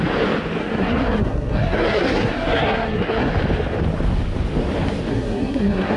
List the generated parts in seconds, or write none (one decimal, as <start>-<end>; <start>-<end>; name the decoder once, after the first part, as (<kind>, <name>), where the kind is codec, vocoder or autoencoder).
0.6-3.3 (codec, SNAC); 5.1-6.0